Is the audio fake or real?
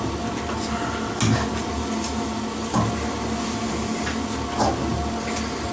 real